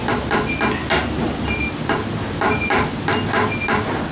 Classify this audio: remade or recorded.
recorded